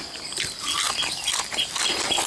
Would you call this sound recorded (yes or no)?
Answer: no